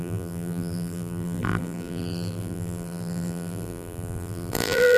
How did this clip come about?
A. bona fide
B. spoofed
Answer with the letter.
B